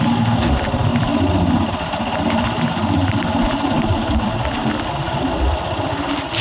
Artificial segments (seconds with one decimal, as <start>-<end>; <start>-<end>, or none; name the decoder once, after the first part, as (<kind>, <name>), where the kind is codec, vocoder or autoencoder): none